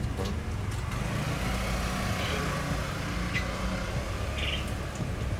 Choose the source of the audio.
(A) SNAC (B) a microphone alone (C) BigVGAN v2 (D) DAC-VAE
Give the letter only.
B